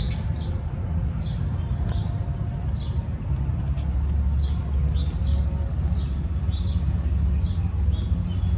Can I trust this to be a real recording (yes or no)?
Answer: yes